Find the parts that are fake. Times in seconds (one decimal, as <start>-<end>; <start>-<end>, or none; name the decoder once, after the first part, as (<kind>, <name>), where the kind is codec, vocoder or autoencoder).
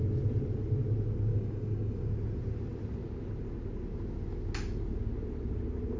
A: 1.3-2.1 (codec, DAC)